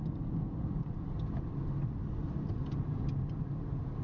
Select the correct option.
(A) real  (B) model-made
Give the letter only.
A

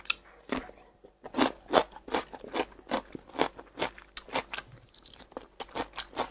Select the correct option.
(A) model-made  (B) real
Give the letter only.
B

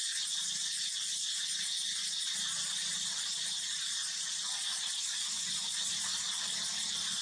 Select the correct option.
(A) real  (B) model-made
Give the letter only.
A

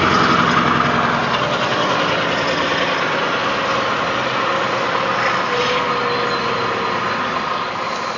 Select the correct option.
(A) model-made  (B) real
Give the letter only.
B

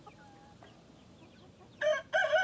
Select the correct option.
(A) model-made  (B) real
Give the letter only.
B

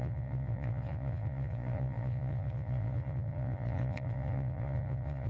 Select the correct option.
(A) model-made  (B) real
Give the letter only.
A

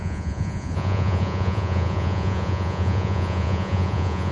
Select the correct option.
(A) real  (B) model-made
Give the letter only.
B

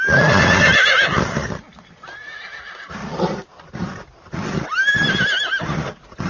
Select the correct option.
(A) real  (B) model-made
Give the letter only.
A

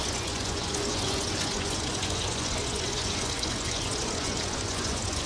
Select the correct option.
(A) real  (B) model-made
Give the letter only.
B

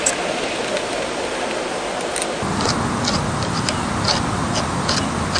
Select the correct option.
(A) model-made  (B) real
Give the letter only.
B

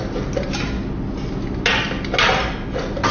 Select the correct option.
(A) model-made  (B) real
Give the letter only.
B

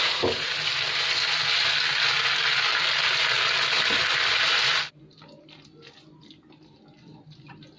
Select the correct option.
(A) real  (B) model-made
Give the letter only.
A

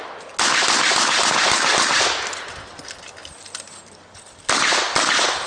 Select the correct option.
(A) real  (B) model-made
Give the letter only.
A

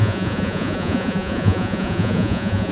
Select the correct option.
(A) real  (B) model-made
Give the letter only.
B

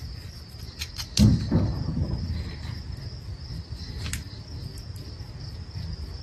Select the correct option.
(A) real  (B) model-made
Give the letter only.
A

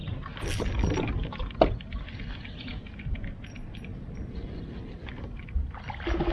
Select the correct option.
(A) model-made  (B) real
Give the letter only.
B